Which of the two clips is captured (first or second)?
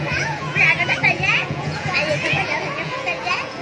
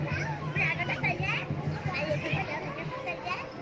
second